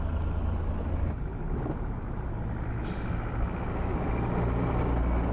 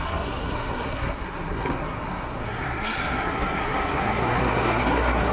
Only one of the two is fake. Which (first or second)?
second